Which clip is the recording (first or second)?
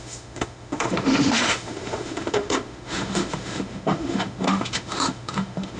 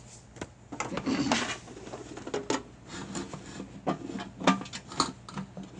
second